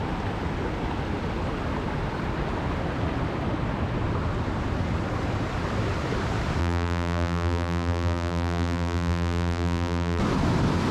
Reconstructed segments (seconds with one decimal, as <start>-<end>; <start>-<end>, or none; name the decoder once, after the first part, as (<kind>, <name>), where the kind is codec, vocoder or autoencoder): 6.6-10.2 (vocoder, BigVGAN v2)